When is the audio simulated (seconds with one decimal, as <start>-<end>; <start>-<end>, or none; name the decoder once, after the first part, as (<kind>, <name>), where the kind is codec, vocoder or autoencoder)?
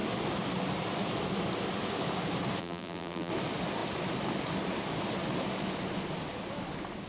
2.6-3.3 (vocoder, BigVGAN v2)